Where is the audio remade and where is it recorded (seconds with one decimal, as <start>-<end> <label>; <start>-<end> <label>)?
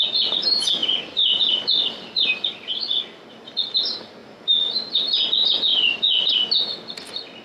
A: 0.0-0.8 recorded; 0.8-3.0 remade; 3.0-5.7 recorded; 5.7-6.3 remade; 6.3-7.4 recorded